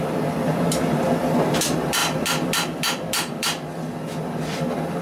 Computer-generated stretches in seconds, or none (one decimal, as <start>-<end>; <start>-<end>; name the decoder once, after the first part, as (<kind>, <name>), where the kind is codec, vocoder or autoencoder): 0.0-5.0 (vocoder, BigVGAN v2)